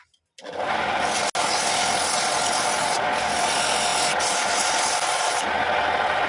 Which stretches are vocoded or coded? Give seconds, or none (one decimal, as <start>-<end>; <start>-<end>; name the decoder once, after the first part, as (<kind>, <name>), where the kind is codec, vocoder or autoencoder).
none